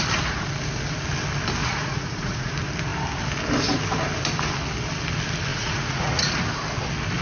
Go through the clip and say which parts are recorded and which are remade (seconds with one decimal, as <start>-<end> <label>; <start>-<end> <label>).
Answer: 0.0-1.6 recorded; 1.6-2.5 remade; 2.5-5.5 recorded; 5.5-6.3 remade; 6.3-7.2 recorded